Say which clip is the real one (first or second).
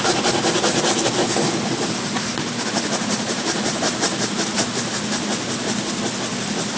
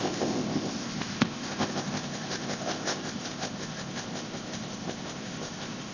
first